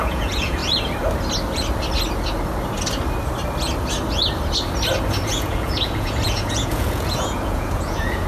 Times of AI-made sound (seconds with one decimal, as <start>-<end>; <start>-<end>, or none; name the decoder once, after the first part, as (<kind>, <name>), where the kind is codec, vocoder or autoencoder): 0.0-0.6 (vocoder, Vocos); 5.3-8.3